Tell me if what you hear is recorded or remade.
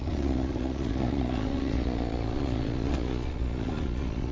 remade